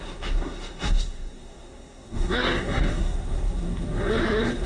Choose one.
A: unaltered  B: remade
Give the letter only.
B